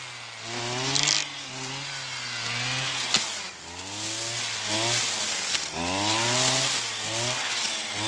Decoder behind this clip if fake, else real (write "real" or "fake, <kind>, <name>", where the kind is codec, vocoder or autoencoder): real